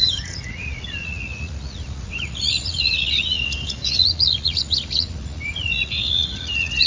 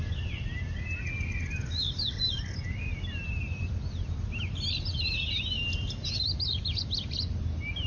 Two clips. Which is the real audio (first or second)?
second